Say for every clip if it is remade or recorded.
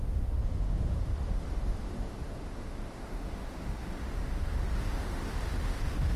remade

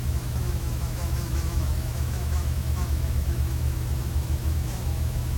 remade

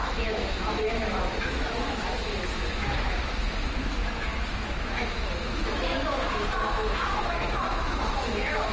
remade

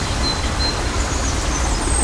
recorded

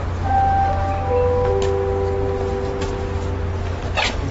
recorded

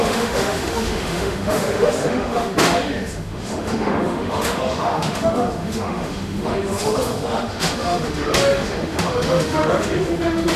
remade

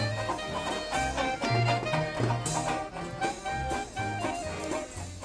recorded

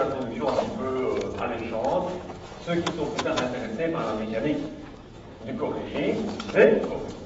remade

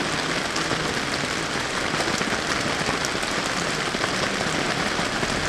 recorded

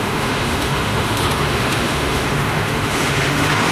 remade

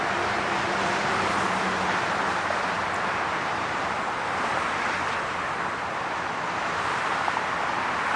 recorded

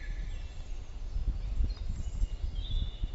recorded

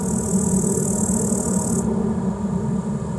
recorded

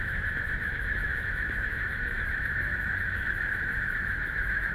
remade